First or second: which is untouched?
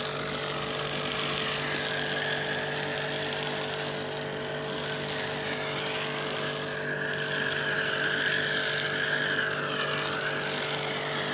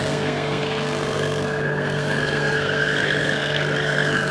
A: first